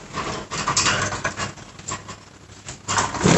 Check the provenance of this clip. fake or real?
real